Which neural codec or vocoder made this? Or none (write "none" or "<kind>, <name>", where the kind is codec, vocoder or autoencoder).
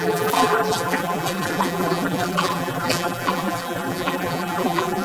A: vocoder, BigVGAN v2